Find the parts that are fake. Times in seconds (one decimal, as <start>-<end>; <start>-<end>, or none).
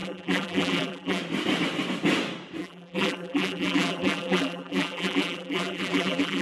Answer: 0.0-1.2; 2.6-6.4